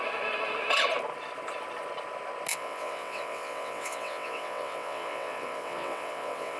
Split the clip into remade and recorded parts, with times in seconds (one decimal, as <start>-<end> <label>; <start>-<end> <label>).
0.0-2.5 recorded; 2.5-6.6 remade